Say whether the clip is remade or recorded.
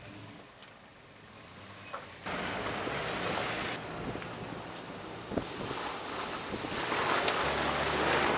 recorded